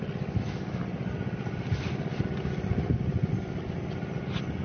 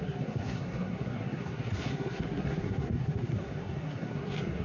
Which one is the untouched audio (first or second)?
first